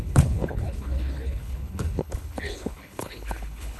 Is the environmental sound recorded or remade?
remade